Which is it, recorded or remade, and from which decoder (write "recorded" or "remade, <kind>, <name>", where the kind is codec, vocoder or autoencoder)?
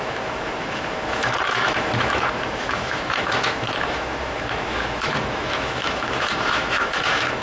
remade, autoencoder, DAC-VAE